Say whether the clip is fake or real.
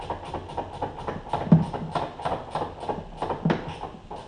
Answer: real